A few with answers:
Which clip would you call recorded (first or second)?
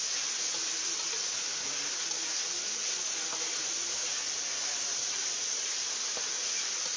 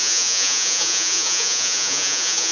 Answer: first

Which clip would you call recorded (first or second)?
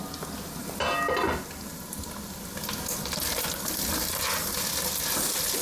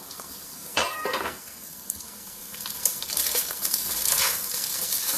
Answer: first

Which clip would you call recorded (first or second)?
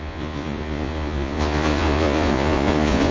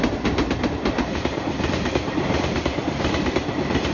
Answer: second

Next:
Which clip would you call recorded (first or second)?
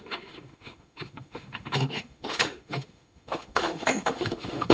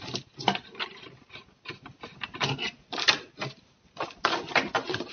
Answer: second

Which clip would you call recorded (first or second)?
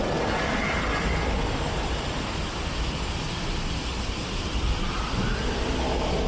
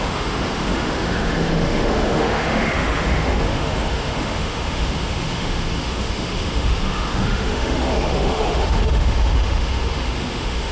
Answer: first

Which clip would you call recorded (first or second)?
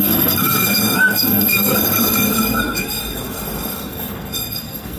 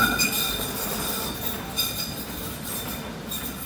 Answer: second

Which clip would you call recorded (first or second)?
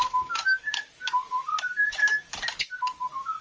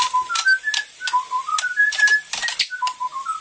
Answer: second